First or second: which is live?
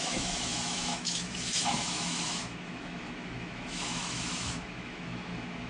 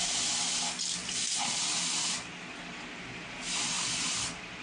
second